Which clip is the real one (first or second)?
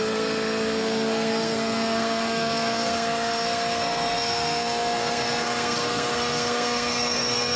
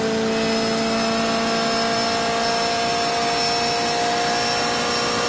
second